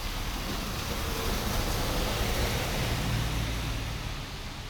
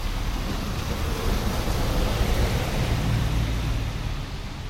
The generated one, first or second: second